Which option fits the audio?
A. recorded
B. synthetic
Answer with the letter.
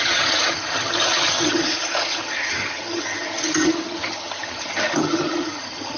B